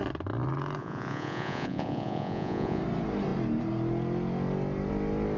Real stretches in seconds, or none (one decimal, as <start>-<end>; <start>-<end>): 0.0-0.8; 2.8-5.4